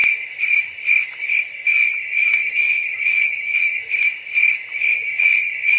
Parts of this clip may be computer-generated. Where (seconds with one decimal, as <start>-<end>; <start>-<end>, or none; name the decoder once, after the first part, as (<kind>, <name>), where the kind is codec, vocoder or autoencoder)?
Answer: 1.7-3.8 (vocoder, HiFi-GAN); 4.9-5.8